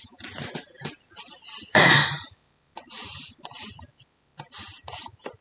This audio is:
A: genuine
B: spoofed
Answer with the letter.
B